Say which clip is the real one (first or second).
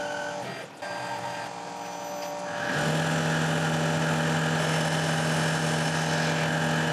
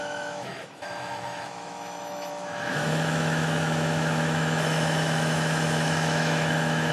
first